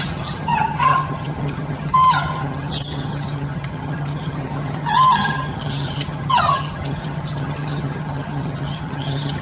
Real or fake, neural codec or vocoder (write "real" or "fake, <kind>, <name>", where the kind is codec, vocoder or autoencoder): fake, vocoder, HiFi-GAN